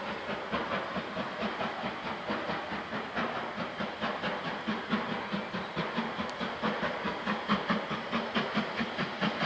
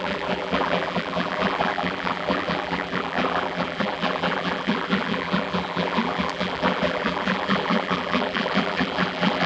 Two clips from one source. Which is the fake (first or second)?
second